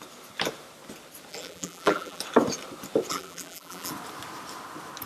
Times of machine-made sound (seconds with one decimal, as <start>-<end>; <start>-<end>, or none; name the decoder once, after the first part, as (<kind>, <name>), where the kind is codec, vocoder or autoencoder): 1.3-2.2 (vocoder, BigVGAN v2); 3.1-3.9